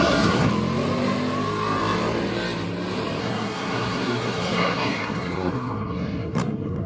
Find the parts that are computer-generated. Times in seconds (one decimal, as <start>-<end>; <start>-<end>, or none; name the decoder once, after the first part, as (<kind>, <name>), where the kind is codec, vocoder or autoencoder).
0.0-0.5 (codec, SNAC); 3.2-6.9

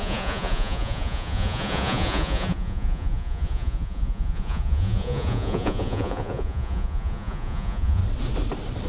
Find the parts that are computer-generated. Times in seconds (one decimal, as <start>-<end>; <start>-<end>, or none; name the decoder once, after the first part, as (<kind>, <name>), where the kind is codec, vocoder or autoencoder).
0.0-8.0 (vocoder, Vocos)

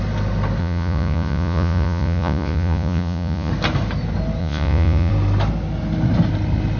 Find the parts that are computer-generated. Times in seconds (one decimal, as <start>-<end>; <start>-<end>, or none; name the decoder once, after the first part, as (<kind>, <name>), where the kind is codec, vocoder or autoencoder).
0.6-3.5 (vocoder, Vocos); 4.4-5.1